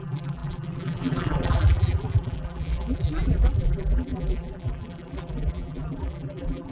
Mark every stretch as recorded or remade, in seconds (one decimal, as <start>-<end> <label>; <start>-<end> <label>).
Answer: 0.0-6.7 remade